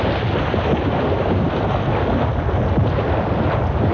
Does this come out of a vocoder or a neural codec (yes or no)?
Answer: no